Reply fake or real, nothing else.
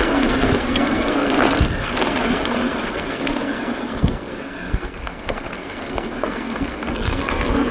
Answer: fake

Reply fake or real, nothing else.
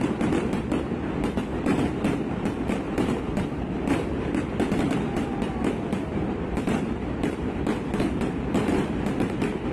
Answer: fake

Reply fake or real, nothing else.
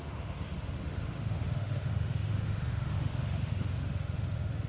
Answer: fake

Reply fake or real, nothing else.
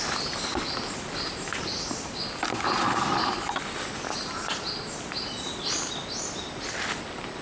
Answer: real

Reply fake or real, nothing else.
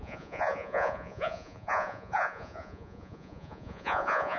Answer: fake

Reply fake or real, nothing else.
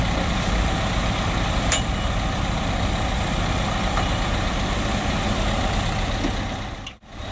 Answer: real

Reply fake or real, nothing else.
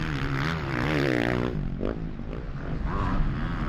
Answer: real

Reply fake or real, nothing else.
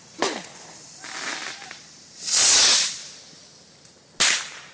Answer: real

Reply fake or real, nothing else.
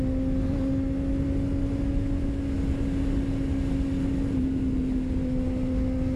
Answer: real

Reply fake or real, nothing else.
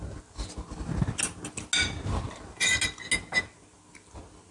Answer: real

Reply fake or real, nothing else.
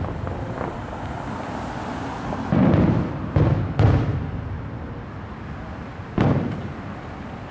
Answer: real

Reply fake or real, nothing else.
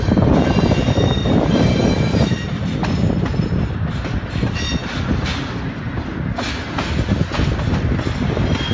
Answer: real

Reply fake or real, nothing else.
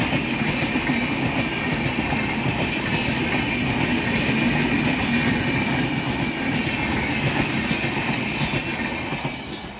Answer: real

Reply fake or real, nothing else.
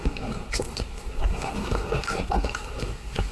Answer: fake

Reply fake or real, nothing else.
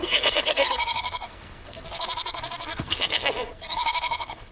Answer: fake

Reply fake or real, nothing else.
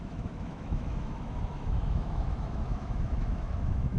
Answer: fake